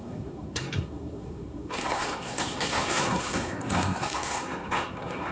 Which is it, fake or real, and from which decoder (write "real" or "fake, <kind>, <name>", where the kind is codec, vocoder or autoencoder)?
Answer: fake, codec, SNAC